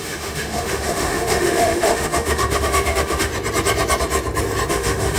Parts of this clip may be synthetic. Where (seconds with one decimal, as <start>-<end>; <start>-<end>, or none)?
0.0-3.3; 4.7-5.2